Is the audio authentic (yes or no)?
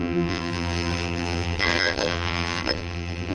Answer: no